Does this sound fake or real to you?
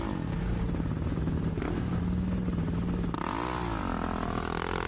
real